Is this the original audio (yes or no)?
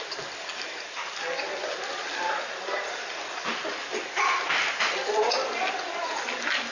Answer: yes